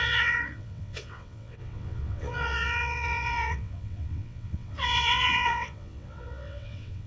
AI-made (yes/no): yes